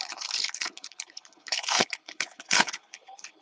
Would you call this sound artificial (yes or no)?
yes